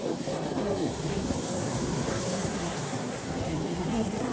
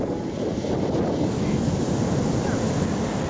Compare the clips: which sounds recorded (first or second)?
second